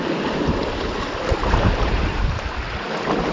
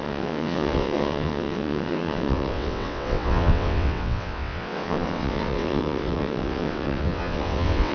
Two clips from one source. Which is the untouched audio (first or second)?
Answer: first